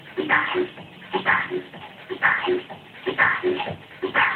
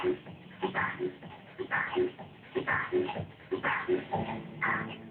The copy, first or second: second